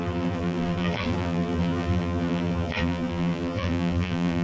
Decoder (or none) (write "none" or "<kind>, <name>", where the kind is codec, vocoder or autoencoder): vocoder, BigVGAN v2